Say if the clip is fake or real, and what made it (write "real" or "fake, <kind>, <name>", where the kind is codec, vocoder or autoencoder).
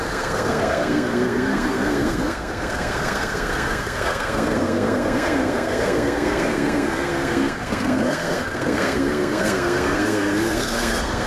fake, codec, SNAC